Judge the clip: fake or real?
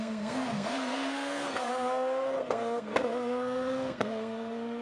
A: fake